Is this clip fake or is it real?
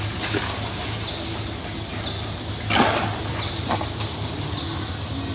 real